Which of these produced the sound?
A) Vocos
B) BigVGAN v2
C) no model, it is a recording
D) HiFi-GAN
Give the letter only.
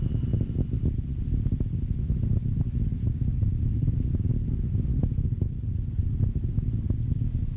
C